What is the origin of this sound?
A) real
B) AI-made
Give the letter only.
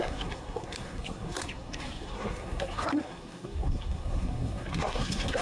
B